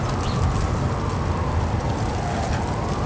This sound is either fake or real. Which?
real